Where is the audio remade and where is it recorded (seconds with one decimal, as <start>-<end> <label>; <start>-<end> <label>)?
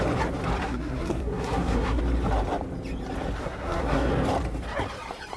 0.0-0.6 recorded; 0.6-2.0 remade; 2.0-3.4 recorded; 3.4-4.1 remade; 4.1-5.4 recorded